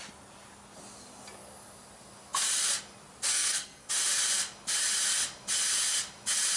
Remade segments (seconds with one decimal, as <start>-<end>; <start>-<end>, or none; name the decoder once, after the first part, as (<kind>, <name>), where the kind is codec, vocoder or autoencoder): 3.3-3.9 (codec, SNAC)

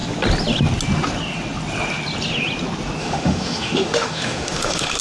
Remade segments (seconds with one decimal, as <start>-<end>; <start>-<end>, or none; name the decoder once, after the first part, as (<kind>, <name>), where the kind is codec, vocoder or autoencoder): 3.0-5.0 (autoencoder, DAC-VAE)

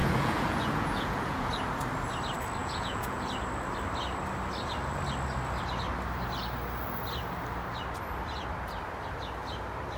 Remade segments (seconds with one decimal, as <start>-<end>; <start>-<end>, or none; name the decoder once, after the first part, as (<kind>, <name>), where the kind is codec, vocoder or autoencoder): 0.0-1.5 (vocoder, Vocos); 2.6-3.3

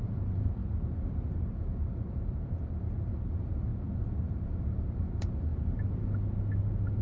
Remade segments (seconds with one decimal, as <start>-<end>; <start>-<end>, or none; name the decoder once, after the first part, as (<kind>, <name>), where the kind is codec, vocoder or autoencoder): 0.0-0.6 (vocoder, BigVGAN v2); 1.5-3.7; 4.3-5.5

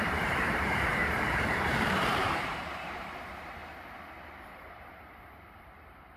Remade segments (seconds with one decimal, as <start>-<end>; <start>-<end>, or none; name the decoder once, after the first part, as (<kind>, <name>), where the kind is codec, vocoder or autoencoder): 0.0-3.6 (vocoder, BigVGAN v2); 4.4-6.2